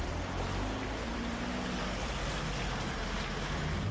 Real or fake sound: real